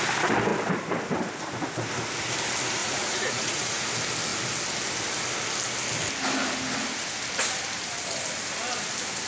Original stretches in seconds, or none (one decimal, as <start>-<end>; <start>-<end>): 0.0-2.8; 3.9-9.3